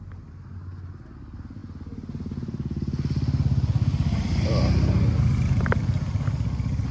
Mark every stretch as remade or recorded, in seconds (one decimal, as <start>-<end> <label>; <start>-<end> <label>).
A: 0.0-6.9 recorded